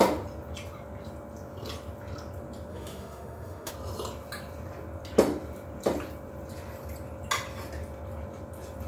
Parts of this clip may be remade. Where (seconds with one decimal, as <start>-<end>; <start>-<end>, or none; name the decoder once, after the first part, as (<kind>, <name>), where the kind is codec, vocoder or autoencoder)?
2.7-3.7 (autoencoder, DAC-VAE)